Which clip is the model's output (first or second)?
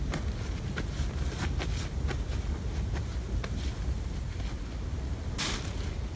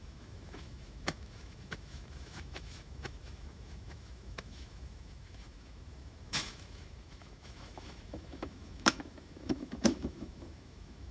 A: second